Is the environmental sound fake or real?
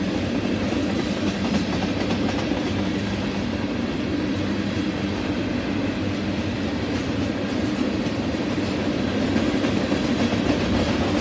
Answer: real